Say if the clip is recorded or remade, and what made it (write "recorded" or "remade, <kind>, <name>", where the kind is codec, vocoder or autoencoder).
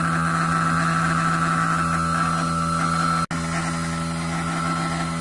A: recorded